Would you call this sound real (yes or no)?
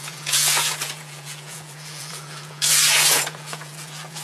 no